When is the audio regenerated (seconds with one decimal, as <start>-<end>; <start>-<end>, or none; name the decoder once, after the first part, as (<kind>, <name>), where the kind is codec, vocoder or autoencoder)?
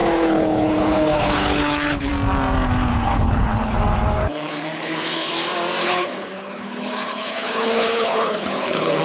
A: 0.0-2.1 (codec, HILCodec); 2.9-3.8; 4.2-5.3; 5.8-9.0